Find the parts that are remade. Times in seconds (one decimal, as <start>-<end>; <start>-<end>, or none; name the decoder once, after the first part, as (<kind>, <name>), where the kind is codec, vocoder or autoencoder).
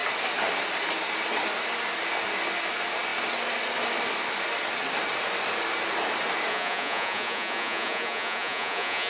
6.5-9.1 (vocoder, Vocos)